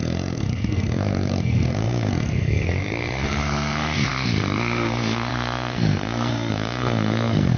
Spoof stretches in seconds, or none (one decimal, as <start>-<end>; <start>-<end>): 0.0-7.6